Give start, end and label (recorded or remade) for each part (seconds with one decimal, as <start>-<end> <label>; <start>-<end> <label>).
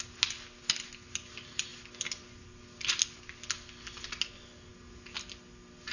0.0-5.9 recorded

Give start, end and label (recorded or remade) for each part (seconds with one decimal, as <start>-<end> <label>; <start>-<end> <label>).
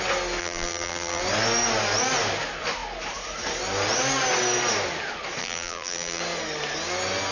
0.0-0.4 recorded; 0.4-1.2 remade; 1.2-5.4 recorded; 5.4-6.2 remade; 6.2-7.3 recorded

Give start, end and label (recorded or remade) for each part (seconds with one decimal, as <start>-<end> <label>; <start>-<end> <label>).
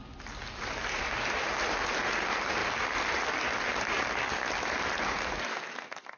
0.0-0.6 recorded; 0.6-1.1 remade; 1.1-6.2 recorded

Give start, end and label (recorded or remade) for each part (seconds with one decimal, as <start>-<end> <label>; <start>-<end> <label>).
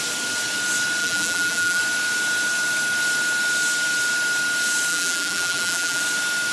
0.0-1.0 recorded; 1.0-1.8 remade; 1.8-4.9 recorded; 4.9-6.0 remade; 6.0-6.5 recorded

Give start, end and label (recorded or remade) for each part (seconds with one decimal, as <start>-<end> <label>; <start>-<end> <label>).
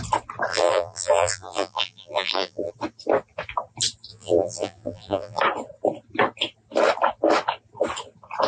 0.0-0.5 recorded; 0.5-2.7 remade; 2.7-4.1 recorded; 4.1-5.4 remade; 5.4-8.5 recorded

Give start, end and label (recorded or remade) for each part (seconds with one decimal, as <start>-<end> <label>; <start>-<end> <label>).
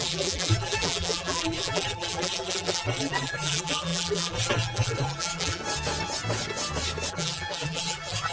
0.0-5.6 remade; 5.6-7.1 recorded; 7.1-8.3 remade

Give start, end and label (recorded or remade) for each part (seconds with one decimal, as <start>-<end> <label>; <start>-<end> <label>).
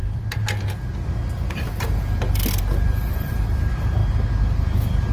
0.0-2.6 recorded; 2.6-4.0 remade; 4.0-4.6 recorded; 4.6-5.1 remade